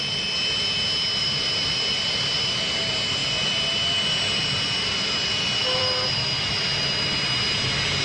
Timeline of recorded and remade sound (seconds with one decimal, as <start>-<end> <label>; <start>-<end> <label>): 0.0-1.2 recorded; 1.2-2.5 remade; 2.5-5.6 recorded; 5.6-6.5 remade; 6.5-8.0 recorded